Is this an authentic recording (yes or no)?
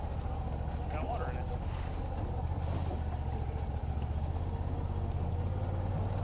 yes